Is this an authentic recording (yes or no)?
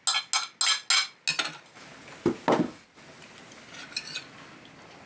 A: yes